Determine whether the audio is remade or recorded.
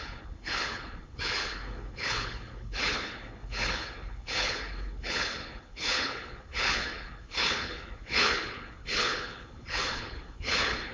remade